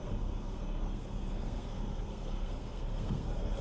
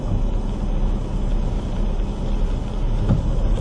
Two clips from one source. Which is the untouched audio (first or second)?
second